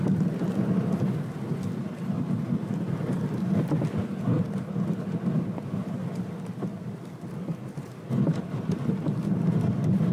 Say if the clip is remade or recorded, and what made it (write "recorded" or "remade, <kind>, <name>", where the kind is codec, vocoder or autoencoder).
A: recorded